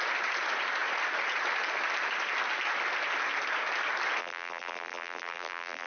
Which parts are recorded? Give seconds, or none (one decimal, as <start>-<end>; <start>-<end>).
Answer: 0.0-4.2